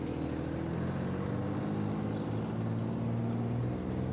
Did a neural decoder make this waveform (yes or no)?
no